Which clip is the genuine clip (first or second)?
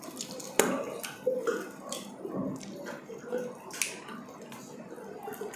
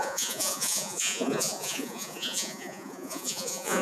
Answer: first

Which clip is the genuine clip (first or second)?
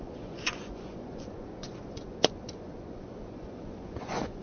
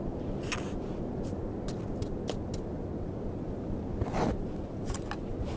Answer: second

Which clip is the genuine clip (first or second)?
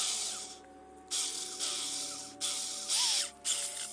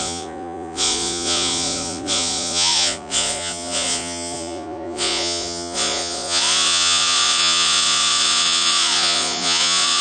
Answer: first